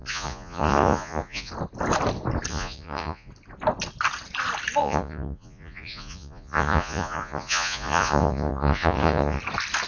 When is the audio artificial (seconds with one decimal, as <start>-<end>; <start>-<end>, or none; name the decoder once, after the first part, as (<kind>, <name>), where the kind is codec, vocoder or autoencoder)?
0.0-1.5 (vocoder, Vocos); 2.5-3.3; 4.8-9.4